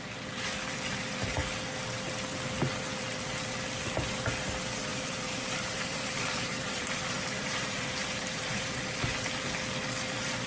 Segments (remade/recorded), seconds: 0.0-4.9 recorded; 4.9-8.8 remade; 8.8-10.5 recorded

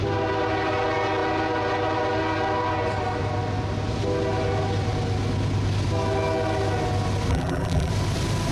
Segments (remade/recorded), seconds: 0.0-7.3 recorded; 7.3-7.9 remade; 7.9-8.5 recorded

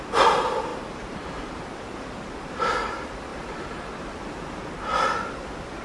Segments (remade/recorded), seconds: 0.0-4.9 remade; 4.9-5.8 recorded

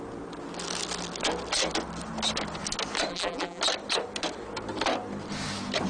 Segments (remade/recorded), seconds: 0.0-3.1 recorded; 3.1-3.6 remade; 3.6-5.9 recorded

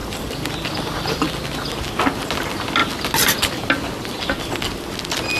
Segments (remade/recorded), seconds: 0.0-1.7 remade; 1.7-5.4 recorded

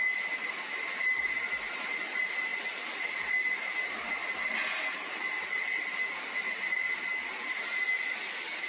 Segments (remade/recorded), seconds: 0.0-8.7 recorded

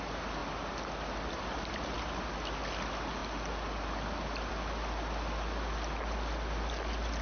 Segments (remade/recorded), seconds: 0.0-7.2 recorded

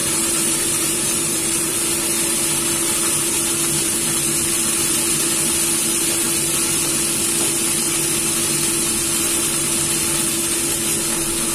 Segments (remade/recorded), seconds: 0.0-1.8 remade; 1.8-11.5 recorded